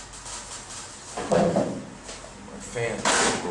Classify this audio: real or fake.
real